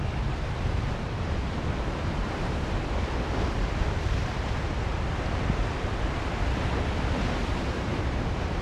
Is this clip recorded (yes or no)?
no